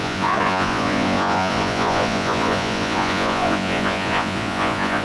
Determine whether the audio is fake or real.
fake